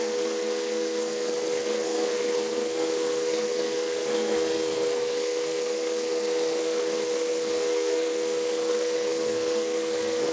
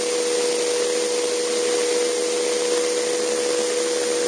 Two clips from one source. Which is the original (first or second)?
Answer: second